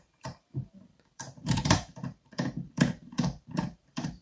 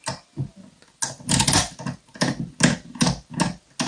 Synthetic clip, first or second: first